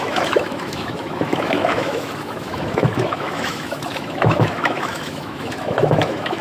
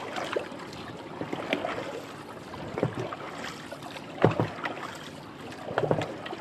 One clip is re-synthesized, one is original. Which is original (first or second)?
second